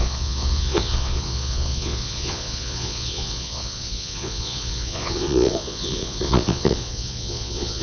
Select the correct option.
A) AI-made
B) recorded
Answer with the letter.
A